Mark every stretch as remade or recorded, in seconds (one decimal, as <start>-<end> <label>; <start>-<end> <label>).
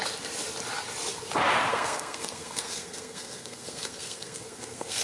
0.0-1.7 recorded; 1.7-5.0 remade